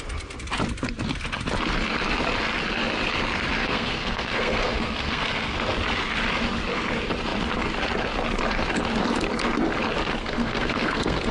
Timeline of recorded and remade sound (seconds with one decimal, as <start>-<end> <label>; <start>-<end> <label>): 0.0-3.6 recorded; 3.6-5.5 remade; 5.5-10.2 recorded; 10.2-11.3 remade